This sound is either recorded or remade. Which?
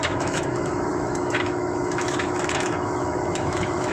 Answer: remade